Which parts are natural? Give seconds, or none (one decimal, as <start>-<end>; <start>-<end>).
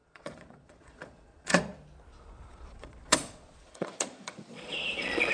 1.6-2.1